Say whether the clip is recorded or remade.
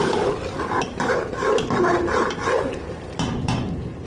remade